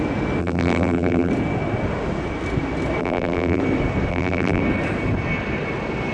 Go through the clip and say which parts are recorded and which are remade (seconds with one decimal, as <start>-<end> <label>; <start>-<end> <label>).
0.0-0.4 recorded; 0.4-1.3 remade; 1.3-3.0 recorded; 3.0-3.6 remade; 3.6-4.1 recorded; 4.1-4.6 remade; 4.6-6.1 recorded